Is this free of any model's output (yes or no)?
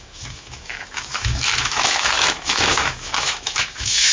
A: no